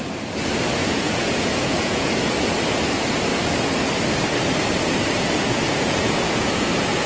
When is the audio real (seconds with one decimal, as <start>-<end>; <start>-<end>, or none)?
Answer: 0.0-0.8; 2.1-5.7